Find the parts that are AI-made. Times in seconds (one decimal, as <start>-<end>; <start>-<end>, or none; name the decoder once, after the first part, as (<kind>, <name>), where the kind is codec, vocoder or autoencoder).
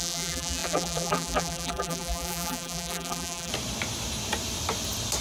0.0-3.5 (vocoder, BigVGAN v2)